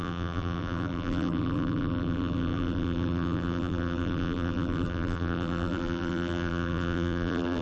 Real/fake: fake